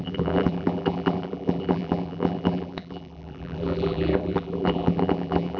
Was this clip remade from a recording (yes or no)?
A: yes